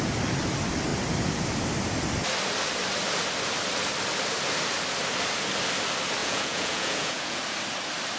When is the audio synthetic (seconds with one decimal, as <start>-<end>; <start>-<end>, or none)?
6.2-7.4